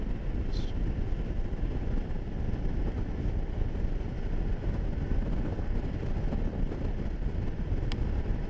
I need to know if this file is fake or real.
real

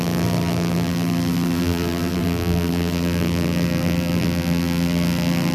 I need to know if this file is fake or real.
fake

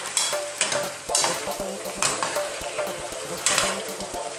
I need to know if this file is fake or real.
fake